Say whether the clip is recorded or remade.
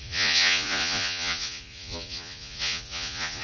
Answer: remade